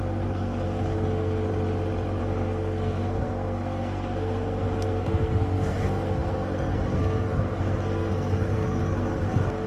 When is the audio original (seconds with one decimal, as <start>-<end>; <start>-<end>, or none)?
1.5-2.2